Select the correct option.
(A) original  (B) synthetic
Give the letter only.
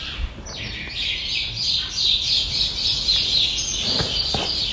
A